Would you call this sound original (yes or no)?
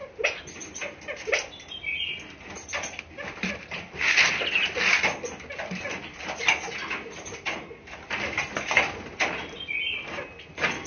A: yes